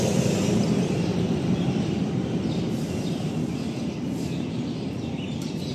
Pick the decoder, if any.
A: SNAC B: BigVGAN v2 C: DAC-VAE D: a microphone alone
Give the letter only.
B